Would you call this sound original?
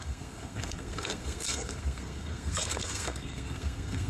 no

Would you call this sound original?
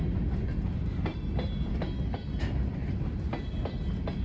yes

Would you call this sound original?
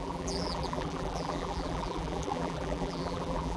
no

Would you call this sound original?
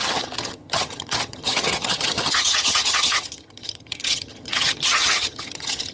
no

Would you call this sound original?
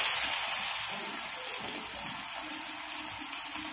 yes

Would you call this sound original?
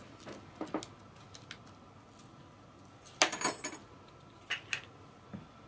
yes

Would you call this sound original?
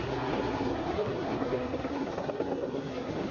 no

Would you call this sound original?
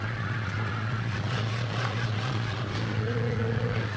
no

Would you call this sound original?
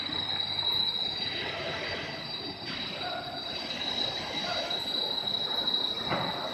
yes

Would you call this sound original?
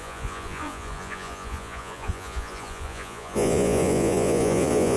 no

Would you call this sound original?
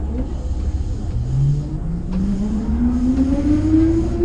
yes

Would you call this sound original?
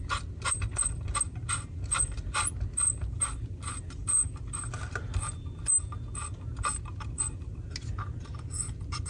yes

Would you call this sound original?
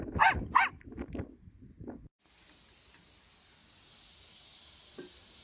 yes